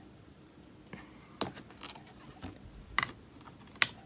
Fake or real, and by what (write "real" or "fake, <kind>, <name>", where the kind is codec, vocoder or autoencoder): real